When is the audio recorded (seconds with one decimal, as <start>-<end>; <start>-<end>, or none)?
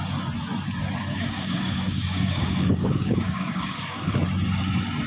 0.0-1.1; 4.2-5.1